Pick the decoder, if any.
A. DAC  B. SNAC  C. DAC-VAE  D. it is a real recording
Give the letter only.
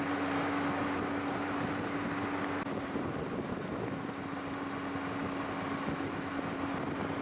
D